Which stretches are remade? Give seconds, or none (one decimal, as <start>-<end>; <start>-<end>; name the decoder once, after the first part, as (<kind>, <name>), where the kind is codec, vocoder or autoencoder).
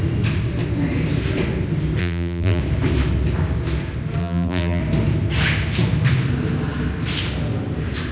2.0-2.6 (vocoder, BigVGAN v2); 4.2-4.8